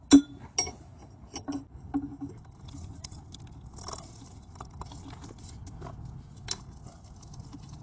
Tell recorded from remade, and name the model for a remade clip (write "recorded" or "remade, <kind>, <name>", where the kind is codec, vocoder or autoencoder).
recorded